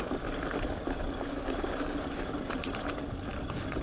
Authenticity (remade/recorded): recorded